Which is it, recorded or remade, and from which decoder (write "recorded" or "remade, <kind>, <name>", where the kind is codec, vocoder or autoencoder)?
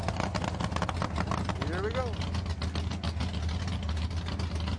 recorded